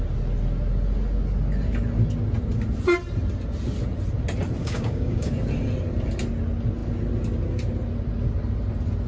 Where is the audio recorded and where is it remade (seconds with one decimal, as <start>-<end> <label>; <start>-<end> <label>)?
0.0-4.6 recorded; 4.6-5.3 remade; 5.3-9.1 recorded